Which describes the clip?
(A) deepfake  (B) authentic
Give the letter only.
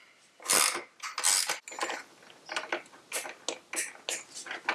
B